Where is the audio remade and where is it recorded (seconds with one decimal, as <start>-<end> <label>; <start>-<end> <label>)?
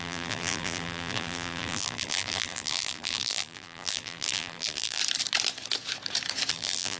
0.0-5.0 remade; 5.0-6.5 recorded; 6.5-7.0 remade